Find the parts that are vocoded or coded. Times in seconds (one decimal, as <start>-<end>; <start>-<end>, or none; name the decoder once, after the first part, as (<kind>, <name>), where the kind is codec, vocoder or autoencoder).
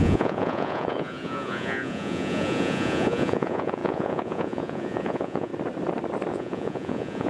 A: 0.0-5.5 (vocoder, Vocos); 6.3-7.3